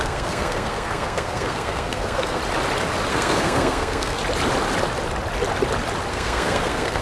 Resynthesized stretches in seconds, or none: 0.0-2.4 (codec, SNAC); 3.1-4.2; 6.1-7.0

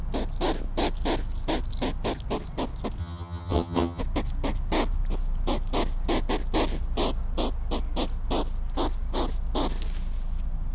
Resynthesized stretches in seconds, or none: 3.0-4.0 (vocoder, HiFi-GAN)

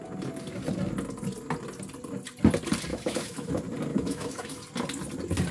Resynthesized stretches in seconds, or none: 2.9-3.5 (autoencoder, DAC-VAE); 3.9-4.6

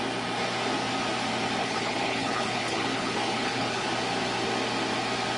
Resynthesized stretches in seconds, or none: 1.6-3.9 (codec, HILCodec)